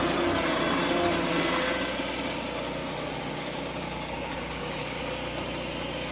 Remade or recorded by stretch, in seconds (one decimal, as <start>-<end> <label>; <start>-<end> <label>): 0.0-2.8 recorded; 2.8-5.0 remade; 5.0-6.1 recorded